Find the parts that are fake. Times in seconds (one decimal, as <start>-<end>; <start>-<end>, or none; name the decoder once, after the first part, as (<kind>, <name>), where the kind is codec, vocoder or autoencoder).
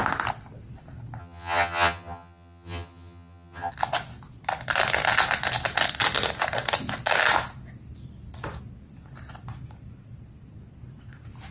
1.2-3.7 (vocoder, HiFi-GAN)